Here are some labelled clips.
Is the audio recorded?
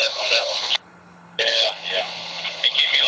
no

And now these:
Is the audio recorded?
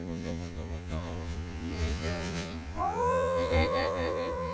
no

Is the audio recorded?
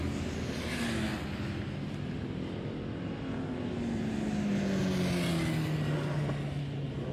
yes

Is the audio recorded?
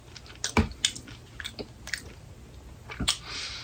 yes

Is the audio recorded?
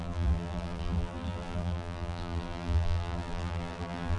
no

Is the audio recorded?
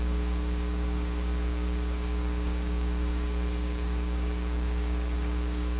no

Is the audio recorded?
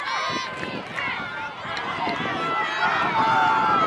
yes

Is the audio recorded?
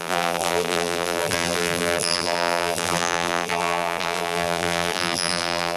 no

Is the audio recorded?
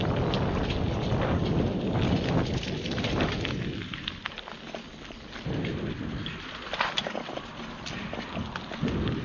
yes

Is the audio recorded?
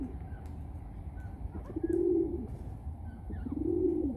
no